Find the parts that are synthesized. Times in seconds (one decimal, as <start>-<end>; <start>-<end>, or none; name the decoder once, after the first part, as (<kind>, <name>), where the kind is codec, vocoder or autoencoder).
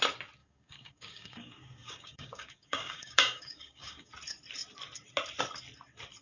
0.4-4.1 (codec, DAC)